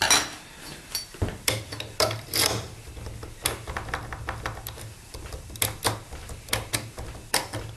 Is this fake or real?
real